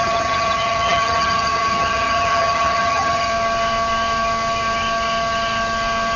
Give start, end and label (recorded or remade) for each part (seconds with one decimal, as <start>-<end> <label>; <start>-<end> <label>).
0.0-3.3 remade; 3.3-6.2 recorded